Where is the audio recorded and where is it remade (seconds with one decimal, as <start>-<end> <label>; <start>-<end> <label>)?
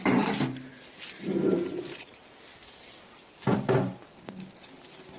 0.0-0.7 remade; 0.7-1.5 recorded; 1.5-2.5 remade; 2.5-5.2 recorded